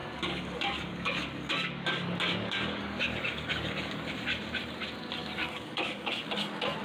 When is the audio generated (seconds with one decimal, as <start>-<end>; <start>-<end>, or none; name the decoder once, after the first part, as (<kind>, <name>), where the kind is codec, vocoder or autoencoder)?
0.0-4.1 (codec, DAC); 5.2-6.8